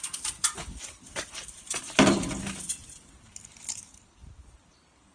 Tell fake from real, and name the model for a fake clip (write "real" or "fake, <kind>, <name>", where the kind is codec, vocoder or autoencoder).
fake, vocoder, BigVGAN v2